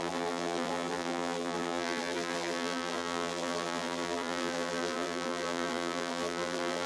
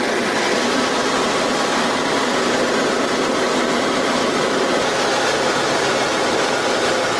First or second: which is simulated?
first